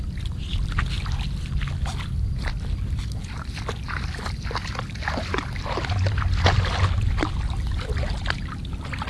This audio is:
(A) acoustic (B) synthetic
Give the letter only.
A